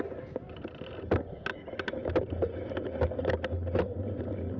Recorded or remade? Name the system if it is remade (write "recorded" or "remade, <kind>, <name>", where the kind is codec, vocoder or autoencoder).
recorded